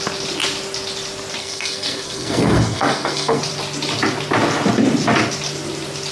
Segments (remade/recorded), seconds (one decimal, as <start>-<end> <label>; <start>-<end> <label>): 0.0-1.4 recorded; 1.4-3.4 remade; 3.4-6.1 recorded